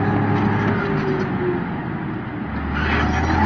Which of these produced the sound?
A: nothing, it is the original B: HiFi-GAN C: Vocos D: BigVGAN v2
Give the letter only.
A